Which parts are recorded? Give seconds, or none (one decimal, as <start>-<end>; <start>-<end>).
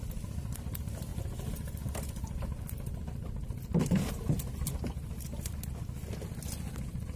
0.0-7.2